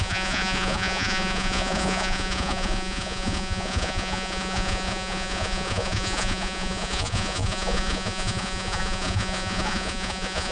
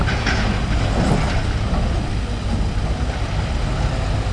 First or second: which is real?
second